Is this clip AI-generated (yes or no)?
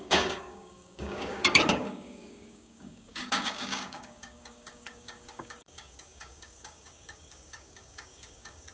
yes